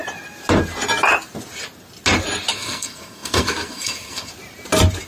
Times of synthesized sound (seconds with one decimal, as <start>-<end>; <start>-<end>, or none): 2.5-4.3